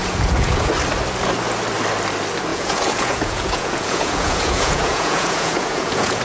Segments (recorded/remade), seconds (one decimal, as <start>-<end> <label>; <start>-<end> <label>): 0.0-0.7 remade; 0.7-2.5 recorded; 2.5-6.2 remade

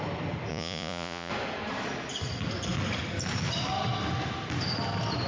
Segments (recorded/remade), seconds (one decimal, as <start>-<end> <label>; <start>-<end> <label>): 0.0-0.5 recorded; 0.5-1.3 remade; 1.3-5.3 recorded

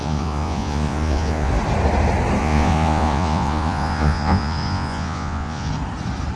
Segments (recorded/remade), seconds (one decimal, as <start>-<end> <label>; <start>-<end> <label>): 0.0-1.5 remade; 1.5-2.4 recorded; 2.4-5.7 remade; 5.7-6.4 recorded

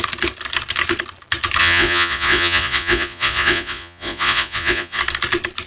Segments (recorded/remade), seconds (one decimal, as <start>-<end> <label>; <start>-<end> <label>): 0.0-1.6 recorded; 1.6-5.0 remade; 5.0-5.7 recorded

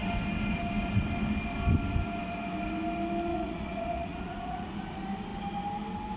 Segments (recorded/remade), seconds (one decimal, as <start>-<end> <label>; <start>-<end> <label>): 0.0-3.3 recorded; 3.3-4.7 remade; 4.7-6.2 recorded

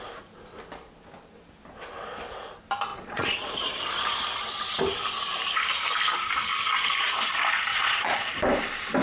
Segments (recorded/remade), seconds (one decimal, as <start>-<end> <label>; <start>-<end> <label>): 0.0-2.9 recorded; 2.9-3.8 remade; 3.8-7.7 recorded; 7.7-8.3 remade; 8.3-9.0 recorded

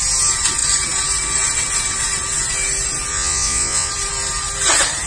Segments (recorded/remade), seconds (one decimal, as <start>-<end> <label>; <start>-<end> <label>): 0.0-3.1 recorded; 3.1-3.9 remade; 3.9-5.1 recorded